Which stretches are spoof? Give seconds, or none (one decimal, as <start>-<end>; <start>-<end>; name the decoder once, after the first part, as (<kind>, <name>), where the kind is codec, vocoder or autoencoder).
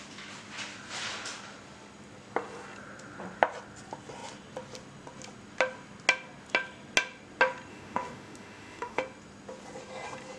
7.7-9.0 (autoencoder, DAC-VAE)